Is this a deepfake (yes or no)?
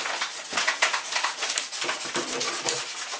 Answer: no